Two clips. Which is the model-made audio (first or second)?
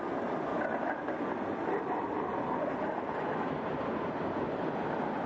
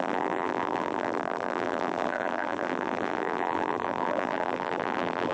second